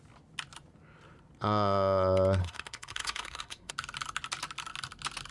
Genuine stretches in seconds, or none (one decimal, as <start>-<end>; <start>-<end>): 0.0-2.4; 3.7-5.3